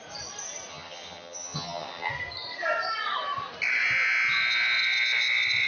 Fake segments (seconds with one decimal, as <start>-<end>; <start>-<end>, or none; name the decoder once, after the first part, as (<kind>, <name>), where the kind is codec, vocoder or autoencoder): 0.7-2.1 (vocoder, HiFi-GAN)